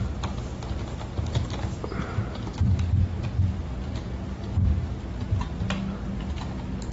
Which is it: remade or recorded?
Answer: recorded